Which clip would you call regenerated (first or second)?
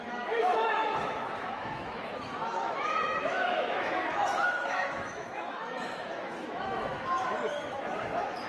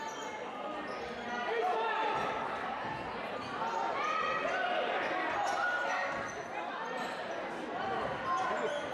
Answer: first